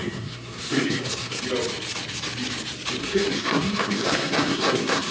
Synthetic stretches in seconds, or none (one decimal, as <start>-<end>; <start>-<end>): 0.0-1.4; 3.0-5.1

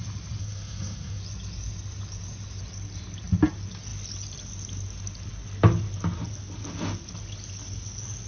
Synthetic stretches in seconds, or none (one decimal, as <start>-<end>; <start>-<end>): 0.4-1.2

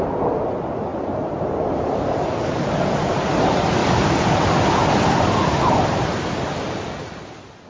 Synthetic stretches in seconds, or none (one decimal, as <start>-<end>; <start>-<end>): 0.9-2.0; 3.8-6.9

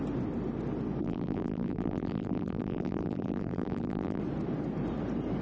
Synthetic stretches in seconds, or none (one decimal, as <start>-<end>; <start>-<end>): 1.0-4.2